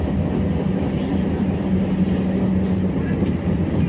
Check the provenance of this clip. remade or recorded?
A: recorded